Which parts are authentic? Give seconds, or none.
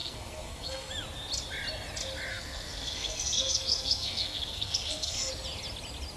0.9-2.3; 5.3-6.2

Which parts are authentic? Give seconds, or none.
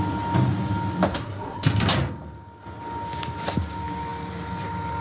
0.0-1.1; 1.7-5.0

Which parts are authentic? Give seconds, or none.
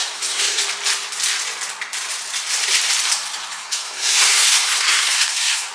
0.6-3.5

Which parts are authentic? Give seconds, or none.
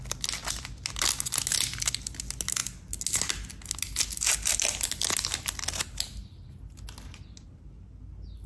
0.0-8.5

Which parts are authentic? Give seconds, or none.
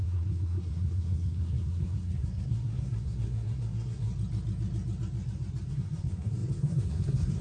4.1-5.7